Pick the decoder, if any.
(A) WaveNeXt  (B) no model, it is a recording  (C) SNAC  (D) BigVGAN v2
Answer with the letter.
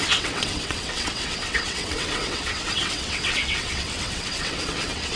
A